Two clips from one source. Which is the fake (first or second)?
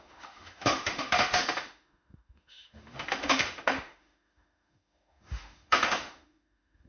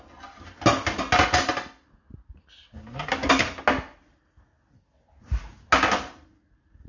first